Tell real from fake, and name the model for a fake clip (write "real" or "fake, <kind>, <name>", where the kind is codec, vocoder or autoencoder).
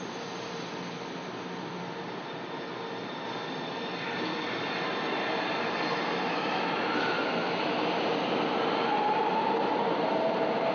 real